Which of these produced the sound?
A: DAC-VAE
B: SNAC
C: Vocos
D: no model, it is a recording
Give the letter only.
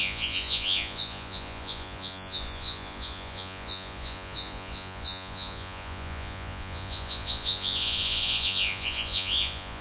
C